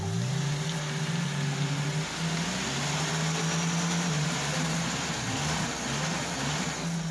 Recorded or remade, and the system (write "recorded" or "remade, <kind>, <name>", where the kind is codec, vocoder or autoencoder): recorded